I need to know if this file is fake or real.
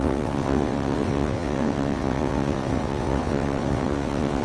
fake